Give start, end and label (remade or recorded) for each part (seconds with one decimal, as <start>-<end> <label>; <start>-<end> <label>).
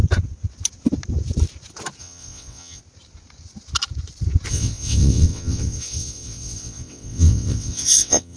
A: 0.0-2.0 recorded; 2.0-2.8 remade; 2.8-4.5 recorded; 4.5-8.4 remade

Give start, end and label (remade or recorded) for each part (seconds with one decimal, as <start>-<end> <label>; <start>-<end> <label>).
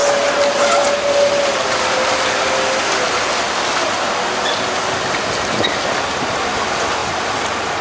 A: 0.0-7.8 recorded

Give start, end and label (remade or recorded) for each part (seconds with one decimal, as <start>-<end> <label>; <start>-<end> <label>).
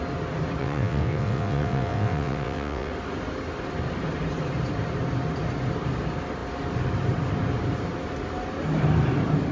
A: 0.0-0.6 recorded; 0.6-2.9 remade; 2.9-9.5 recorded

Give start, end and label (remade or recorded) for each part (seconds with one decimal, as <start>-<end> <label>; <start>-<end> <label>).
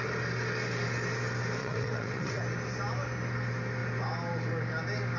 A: 0.0-1.6 recorded; 1.6-2.4 remade; 2.4-5.2 recorded